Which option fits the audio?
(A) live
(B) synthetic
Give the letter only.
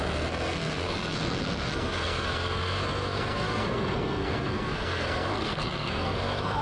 B